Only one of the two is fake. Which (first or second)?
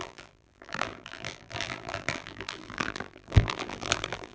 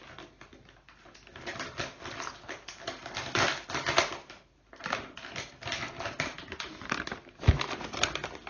first